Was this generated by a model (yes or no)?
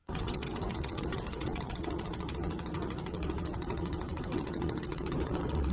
yes